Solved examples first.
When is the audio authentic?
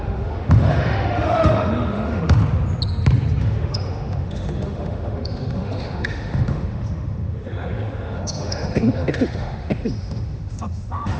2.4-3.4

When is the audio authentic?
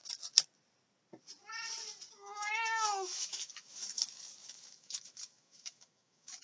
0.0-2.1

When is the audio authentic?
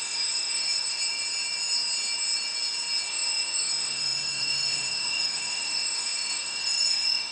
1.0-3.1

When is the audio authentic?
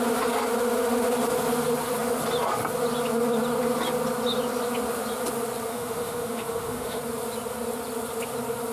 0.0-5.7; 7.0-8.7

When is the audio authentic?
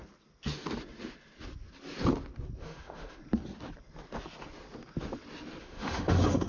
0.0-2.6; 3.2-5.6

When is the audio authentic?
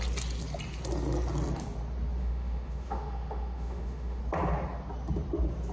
0.0-2.2; 4.2-5.7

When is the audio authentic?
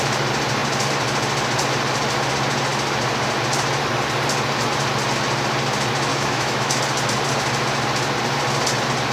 0.0-6.1; 6.8-9.1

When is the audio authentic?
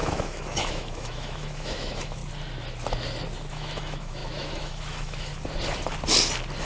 2.2-3.5; 5.3-6.6